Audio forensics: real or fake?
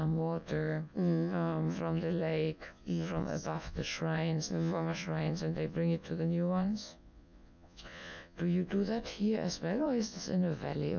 fake